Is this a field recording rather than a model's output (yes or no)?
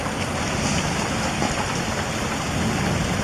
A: yes